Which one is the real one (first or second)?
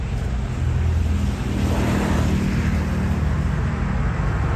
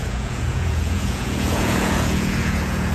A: first